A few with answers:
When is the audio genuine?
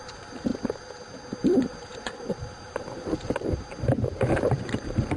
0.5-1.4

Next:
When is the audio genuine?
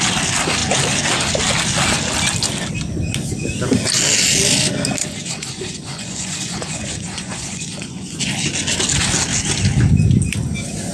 0.0-5.0; 8.2-10.9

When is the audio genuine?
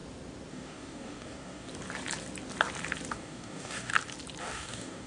0.0-0.5; 1.7-3.1; 3.9-4.4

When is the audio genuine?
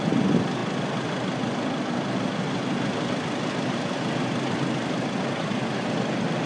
0.0-6.5